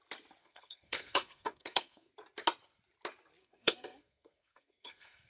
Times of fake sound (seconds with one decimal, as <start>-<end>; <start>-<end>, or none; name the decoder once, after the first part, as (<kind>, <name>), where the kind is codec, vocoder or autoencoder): 0.4-2.1 (codec, SNAC); 3.4-5.3